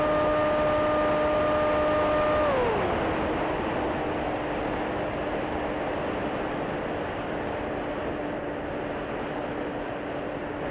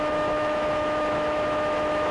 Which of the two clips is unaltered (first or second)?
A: first